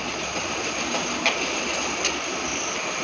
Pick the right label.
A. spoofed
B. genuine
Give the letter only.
B